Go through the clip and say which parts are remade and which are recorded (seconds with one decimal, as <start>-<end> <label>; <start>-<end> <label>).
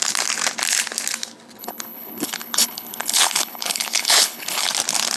0.0-1.6 recorded; 1.6-4.7 remade; 4.7-5.2 recorded